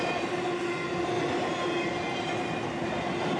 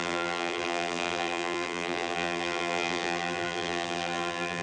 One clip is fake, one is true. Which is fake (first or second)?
second